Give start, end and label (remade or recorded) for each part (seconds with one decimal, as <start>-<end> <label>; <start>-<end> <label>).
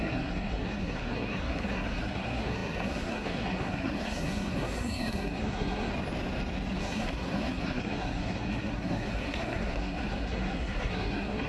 0.0-5.9 remade; 5.9-6.8 recorded; 6.8-11.5 remade